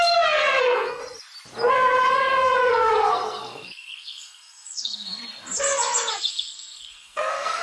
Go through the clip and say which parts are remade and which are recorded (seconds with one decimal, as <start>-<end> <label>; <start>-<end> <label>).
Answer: 0.0-1.0 remade; 1.0-1.7 recorded; 1.7-5.2 remade; 5.2-6.3 recorded; 6.3-7.6 remade